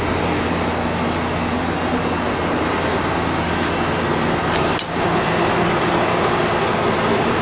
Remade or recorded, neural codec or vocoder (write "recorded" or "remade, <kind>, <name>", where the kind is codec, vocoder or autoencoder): recorded